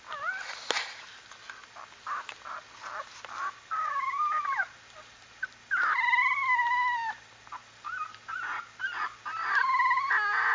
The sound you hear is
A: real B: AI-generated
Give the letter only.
A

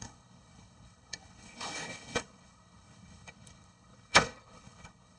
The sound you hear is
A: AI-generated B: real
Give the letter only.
A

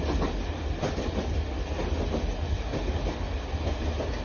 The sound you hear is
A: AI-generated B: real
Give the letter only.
B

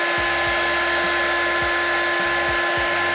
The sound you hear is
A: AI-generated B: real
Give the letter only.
B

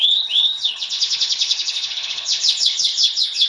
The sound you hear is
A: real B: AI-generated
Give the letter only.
B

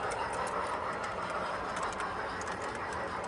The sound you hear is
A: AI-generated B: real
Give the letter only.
B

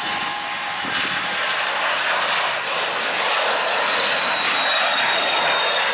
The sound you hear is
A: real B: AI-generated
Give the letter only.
A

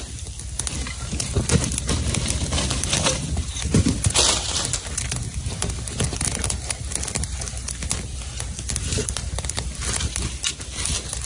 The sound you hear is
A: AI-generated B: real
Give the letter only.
B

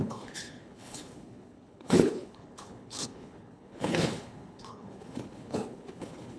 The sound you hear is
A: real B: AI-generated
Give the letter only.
B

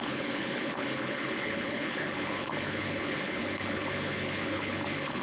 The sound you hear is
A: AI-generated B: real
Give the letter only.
A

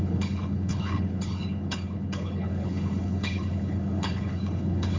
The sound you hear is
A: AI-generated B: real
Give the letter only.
A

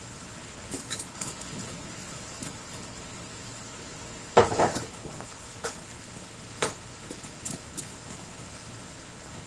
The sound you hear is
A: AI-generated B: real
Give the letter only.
A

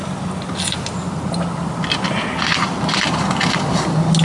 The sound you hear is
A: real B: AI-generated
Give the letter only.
A